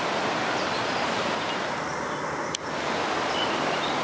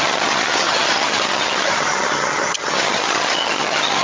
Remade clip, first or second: second